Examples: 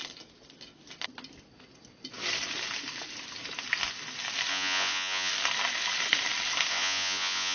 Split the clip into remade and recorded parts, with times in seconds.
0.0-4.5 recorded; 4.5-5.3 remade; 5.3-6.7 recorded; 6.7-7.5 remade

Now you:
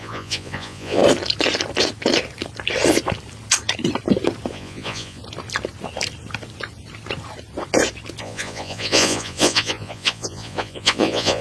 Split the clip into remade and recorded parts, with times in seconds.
0.0-1.0 remade; 1.0-4.5 recorded; 4.5-5.2 remade; 5.2-8.2 recorded; 8.2-11.4 remade

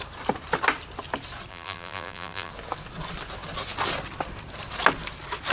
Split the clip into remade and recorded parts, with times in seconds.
0.0-1.5 recorded; 1.5-2.5 remade; 2.5-5.5 recorded

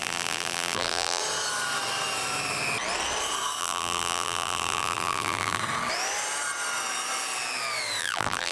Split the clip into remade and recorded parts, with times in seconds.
0.0-1.2 remade; 1.2-3.6 recorded; 3.6-5.6 remade; 5.6-8.0 recorded; 8.0-8.5 remade

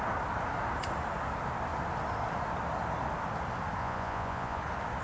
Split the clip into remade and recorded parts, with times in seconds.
0.0-3.8 recorded; 3.8-4.6 remade; 4.6-5.0 recorded

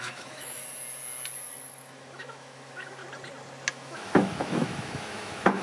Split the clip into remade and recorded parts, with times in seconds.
0.0-0.6 remade; 0.6-1.8 recorded; 1.8-3.0 remade; 3.0-3.7 recorded; 3.7-5.6 remade

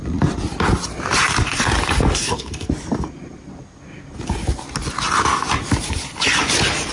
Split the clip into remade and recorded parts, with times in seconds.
0.0-2.2 recorded; 2.2-2.7 remade; 2.7-6.9 recorded

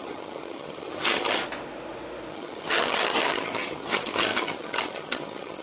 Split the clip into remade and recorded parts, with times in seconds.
0.0-1.4 remade; 1.4-2.3 recorded; 2.3-5.6 remade